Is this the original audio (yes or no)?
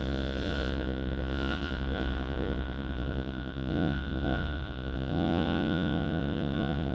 no